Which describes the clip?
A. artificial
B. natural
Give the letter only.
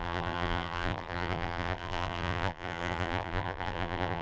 A